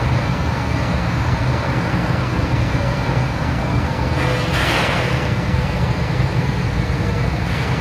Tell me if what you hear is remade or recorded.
remade